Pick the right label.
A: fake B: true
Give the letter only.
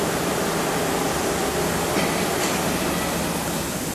B